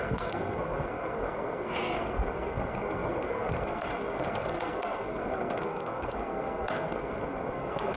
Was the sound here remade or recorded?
remade